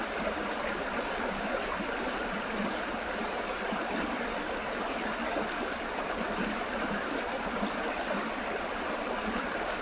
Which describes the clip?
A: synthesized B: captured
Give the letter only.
A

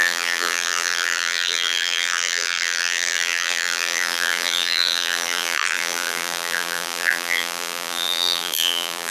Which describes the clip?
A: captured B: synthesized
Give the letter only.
B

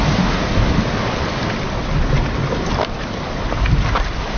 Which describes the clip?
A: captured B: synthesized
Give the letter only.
A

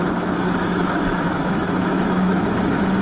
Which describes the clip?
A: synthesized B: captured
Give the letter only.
A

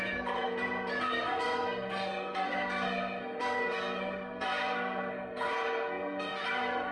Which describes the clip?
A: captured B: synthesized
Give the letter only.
B